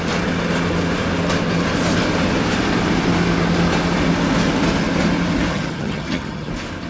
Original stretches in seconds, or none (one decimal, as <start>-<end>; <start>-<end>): 0.0-5.5; 6.5-6.9